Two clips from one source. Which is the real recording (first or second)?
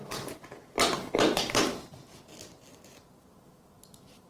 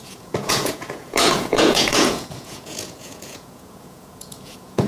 first